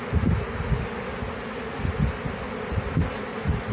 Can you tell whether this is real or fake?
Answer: real